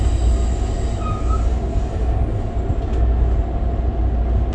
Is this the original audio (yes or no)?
yes